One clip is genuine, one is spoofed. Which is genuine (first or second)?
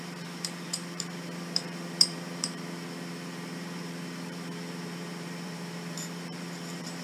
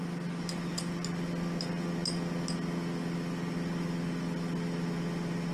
second